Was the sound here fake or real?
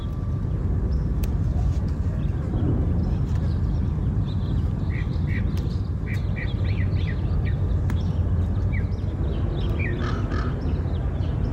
real